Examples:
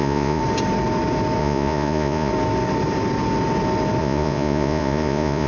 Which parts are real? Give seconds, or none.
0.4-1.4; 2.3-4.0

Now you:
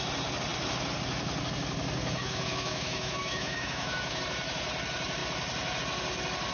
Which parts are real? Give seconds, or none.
0.0-2.0; 4.2-6.5

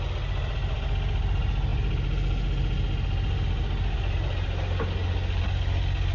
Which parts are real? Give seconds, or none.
0.0-6.1

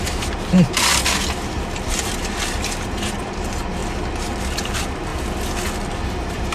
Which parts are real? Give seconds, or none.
0.9-3.2; 3.8-4.4; 5.1-5.9

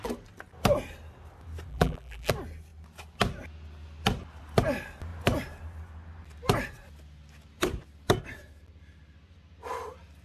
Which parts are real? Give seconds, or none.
0.0-1.7; 2.3-10.2

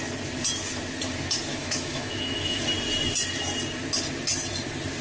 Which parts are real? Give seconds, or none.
0.0-1.5; 2.6-5.0

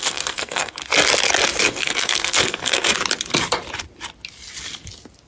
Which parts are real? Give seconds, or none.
0.8-1.6; 3.0-5.3

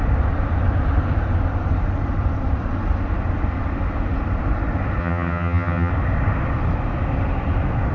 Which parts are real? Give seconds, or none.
0.0-5.0; 5.9-7.9